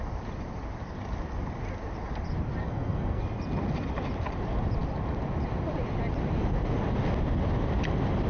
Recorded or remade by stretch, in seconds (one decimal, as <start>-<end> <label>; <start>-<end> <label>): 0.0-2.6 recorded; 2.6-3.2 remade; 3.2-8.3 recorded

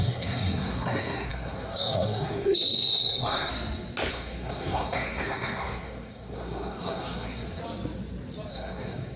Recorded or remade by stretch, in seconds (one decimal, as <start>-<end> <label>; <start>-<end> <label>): 0.0-3.5 remade; 3.5-4.1 recorded; 4.1-7.6 remade; 7.6-8.5 recorded; 8.5-9.2 remade

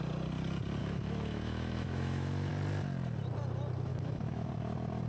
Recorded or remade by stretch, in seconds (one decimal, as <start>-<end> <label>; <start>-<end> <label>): 0.0-0.8 recorded; 0.8-2.5 remade; 2.5-3.9 recorded; 3.9-4.5 remade; 4.5-5.1 recorded

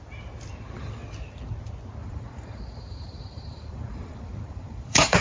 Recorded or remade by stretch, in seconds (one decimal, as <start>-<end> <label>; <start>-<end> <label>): 0.0-2.0 recorded; 2.0-5.2 remade

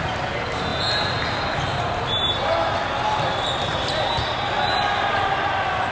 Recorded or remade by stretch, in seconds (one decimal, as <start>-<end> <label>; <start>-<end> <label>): 0.0-5.9 recorded

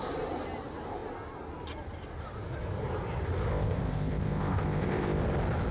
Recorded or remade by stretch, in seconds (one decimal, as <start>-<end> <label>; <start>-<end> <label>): 0.0-3.5 recorded; 3.5-5.2 remade; 5.2-5.7 recorded